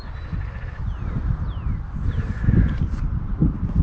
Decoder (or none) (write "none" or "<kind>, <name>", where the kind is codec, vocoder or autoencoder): none